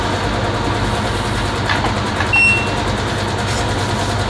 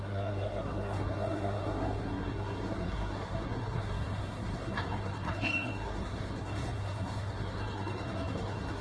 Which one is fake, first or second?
second